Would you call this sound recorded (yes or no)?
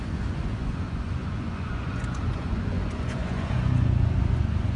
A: no